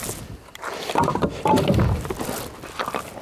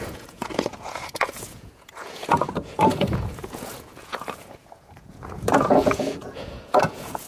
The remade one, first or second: second